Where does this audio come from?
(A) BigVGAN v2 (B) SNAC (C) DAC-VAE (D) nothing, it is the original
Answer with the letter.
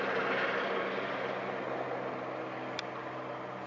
D